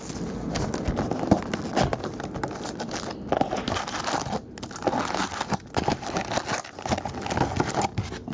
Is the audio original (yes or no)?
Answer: yes